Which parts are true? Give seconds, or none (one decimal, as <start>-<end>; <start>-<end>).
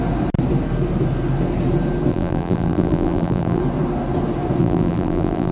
0.0-2.1; 3.6-4.6